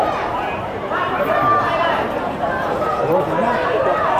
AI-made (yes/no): yes